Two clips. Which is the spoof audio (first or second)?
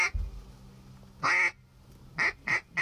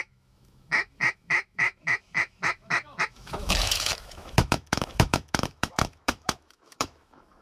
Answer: second